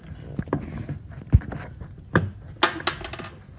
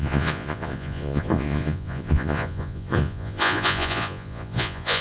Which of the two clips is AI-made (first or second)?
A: second